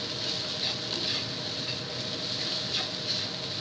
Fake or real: real